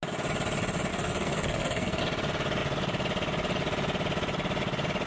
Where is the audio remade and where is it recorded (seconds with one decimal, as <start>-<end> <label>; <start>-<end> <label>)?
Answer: 0.0-0.9 recorded; 0.9-2.0 remade; 2.0-5.1 recorded

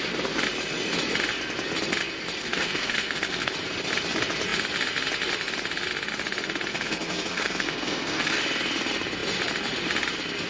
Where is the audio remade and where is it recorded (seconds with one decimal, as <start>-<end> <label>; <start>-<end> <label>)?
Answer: 0.0-2.4 recorded; 2.4-3.5 remade; 3.5-6.7 recorded; 6.7-8.4 remade; 8.4-10.5 recorded

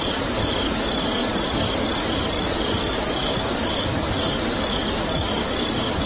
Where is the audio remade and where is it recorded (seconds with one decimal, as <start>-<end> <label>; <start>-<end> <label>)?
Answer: 0.0-6.1 recorded

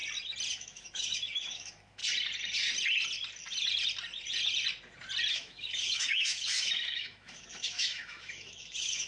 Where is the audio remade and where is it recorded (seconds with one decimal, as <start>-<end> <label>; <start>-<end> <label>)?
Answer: 0.0-0.5 recorded; 0.5-2.0 remade; 2.0-5.3 recorded; 5.3-9.1 remade

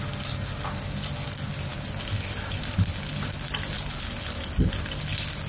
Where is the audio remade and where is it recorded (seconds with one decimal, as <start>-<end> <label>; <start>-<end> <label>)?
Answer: 0.0-5.5 recorded